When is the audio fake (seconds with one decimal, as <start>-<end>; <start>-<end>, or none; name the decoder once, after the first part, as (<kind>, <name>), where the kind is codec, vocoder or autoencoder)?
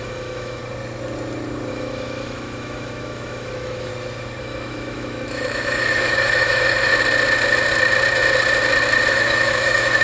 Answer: 0.0-0.6 (autoencoder, DAC-VAE); 1.7-3.9; 4.4-6.9; 9.1-10.0